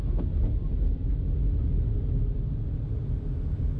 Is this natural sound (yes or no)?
yes